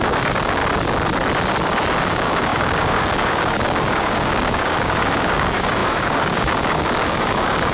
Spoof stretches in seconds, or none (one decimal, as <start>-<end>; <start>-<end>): 0.0-0.6; 2.0-7.7